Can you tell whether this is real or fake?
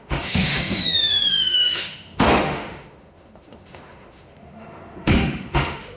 fake